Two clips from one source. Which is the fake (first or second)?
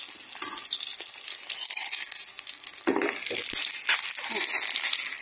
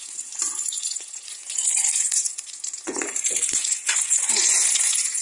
second